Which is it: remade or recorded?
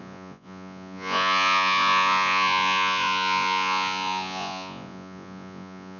remade